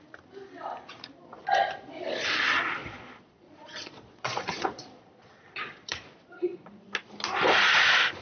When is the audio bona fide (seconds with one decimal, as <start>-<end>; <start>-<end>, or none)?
0.0-2.8; 6.9-8.2